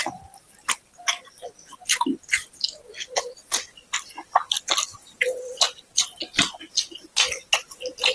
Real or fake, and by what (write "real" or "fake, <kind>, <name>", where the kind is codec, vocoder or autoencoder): real